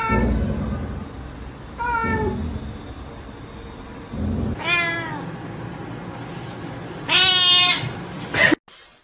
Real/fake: real